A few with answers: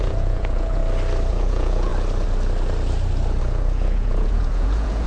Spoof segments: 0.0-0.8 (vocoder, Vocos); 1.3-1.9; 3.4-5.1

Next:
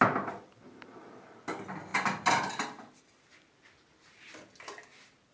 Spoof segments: none

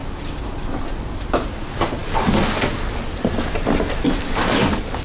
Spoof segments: none

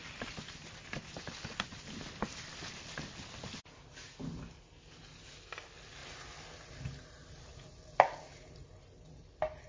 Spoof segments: none

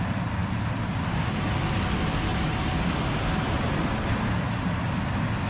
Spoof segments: 2.3-2.9 (vocoder, BigVGAN v2)

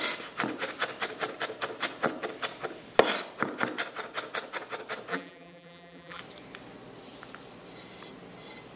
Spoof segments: 5.1-6.2 (vocoder, BigVGAN v2)

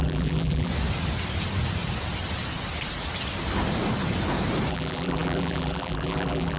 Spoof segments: 0.0-0.7 (vocoder, BigVGAN v2); 4.7-6.6